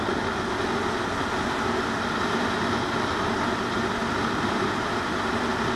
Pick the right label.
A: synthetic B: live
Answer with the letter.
B